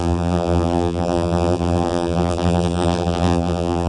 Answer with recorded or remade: remade